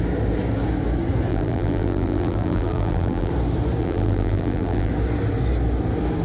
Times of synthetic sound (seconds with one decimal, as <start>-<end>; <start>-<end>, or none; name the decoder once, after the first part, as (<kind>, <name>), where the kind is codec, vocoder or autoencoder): 1.3-3.3 (vocoder, BigVGAN v2); 3.8-4.9